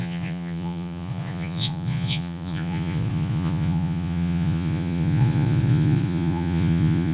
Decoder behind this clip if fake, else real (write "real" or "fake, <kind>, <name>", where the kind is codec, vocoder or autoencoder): fake, vocoder, Vocos